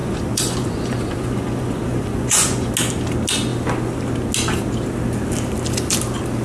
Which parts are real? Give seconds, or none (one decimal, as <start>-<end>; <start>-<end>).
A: 2.7-6.4